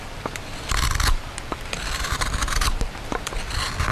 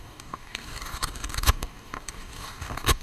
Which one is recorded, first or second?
first